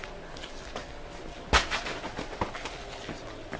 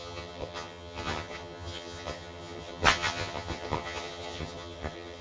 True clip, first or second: first